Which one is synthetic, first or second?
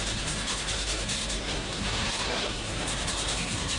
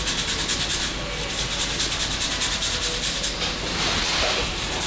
first